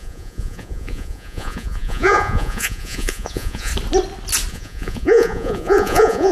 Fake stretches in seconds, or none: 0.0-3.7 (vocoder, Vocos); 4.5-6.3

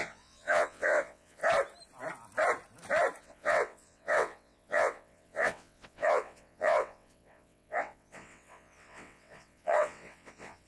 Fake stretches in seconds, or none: 0.0-1.4 (vocoder, WaveNeXt); 3.2-10.7

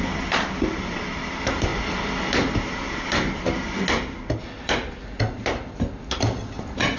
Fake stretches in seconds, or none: none

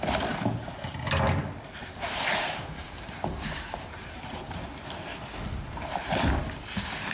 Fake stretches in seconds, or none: 1.8-4.7 (vocoder, BigVGAN v2)

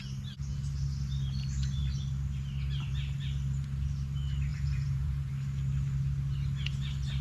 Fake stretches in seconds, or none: 4.5-5.3 (vocoder, Vocos)

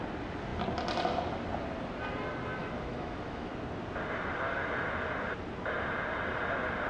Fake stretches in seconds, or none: 2.6-3.5 (autoencoder, DAC-VAE)

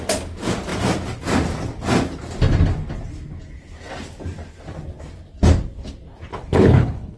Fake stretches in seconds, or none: 6.3-7.2 (codec, HILCodec)